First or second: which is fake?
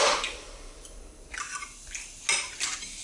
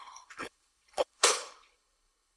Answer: second